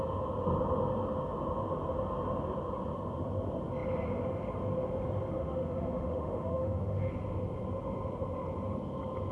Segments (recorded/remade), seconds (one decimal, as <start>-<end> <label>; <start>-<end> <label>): 0.0-5.4 recorded; 5.4-7.1 remade; 7.1-9.3 recorded

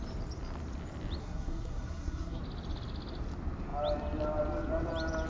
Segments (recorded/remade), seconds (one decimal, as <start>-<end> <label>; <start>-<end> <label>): 0.0-1.2 recorded; 1.2-2.4 remade; 2.4-5.3 recorded